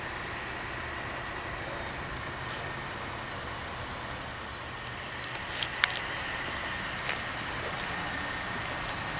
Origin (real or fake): real